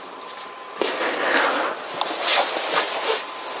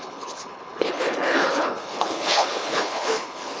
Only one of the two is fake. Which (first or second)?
second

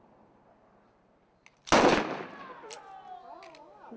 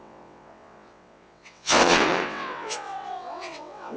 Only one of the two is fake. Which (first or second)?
second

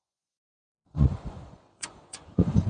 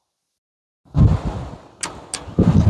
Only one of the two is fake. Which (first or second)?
first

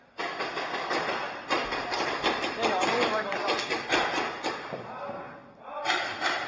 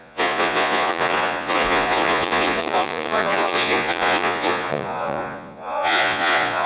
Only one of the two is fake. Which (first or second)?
second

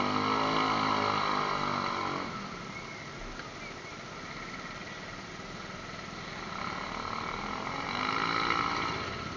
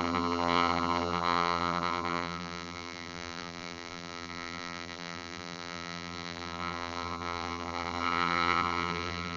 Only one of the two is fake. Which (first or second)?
second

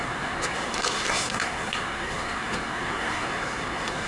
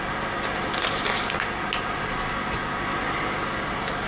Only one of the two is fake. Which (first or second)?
first